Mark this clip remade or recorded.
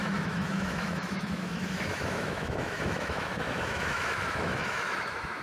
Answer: remade